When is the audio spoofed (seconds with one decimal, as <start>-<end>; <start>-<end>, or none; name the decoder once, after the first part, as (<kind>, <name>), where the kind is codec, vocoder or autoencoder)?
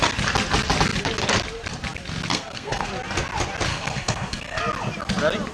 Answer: 2.3-2.9 (codec, SNAC); 3.7-4.6